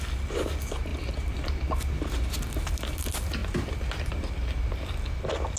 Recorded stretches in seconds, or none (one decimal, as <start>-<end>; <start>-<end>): 0.0-5.6